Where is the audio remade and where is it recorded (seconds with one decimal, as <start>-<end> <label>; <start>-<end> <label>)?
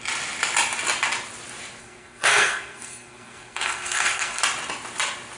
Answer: 0.0-1.8 recorded; 1.8-4.4 remade; 4.4-5.4 recorded